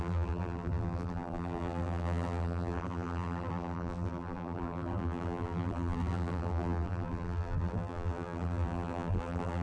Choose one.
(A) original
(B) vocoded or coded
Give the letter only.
B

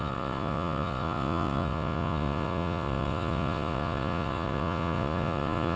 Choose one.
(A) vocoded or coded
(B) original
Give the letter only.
A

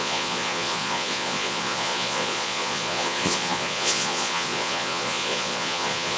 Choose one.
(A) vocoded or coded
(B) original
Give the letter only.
A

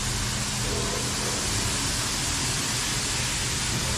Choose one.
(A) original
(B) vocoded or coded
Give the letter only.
A